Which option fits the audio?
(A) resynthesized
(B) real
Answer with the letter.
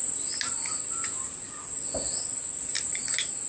B